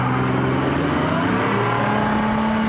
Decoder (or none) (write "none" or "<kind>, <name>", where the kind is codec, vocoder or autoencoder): none